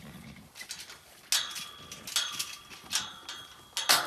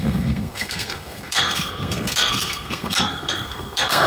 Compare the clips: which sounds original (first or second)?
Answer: first